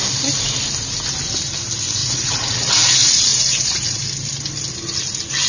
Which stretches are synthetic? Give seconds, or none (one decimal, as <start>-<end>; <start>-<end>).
2.0-2.7; 3.3-4.0